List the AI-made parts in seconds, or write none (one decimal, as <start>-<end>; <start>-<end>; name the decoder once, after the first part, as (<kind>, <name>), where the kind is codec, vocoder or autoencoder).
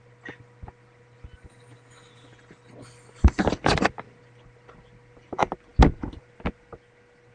3.6-4.2 (vocoder, BigVGAN v2); 5.7-6.4